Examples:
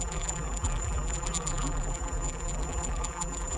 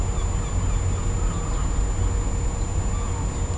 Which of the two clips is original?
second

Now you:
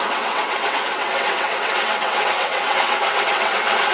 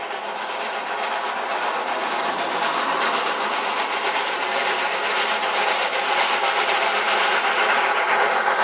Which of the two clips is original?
second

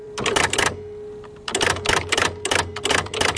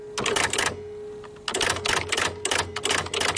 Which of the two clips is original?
second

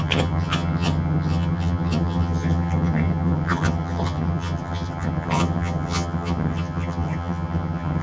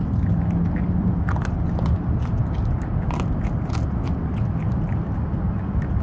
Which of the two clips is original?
second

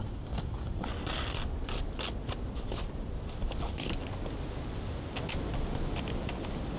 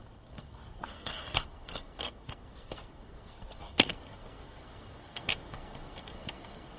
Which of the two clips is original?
first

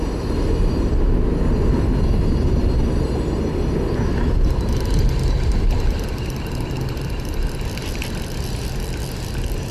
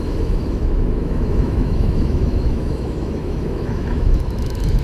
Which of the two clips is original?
first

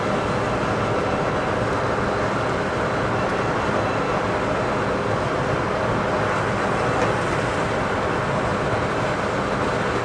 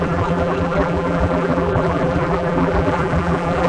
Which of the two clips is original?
first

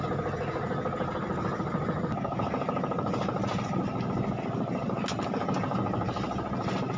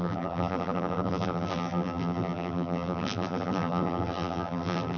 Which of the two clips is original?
first